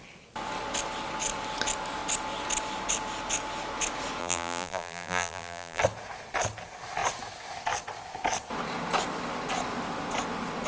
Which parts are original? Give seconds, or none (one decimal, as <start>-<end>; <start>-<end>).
0.0-4.2; 5.8-10.7